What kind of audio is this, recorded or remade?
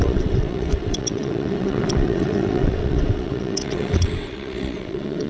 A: remade